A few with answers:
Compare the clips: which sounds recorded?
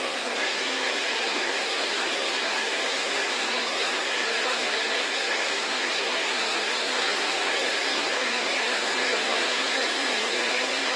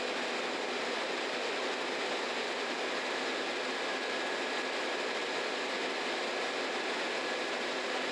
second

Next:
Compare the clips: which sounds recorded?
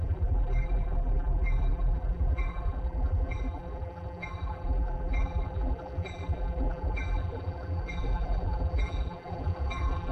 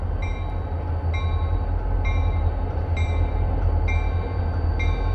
second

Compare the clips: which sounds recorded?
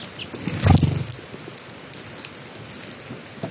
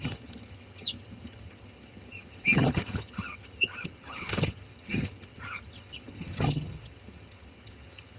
first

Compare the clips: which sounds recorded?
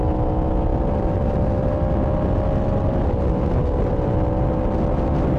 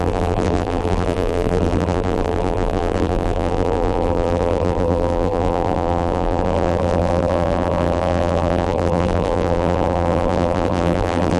first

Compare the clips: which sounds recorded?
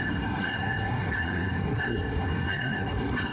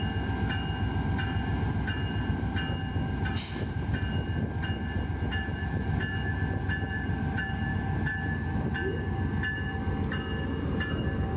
second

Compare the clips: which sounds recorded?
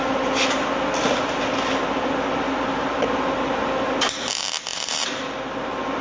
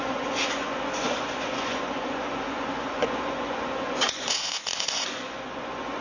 first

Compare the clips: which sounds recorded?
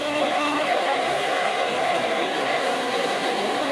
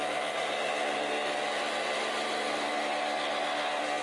second